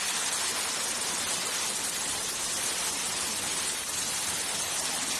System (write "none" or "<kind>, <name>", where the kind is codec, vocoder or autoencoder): none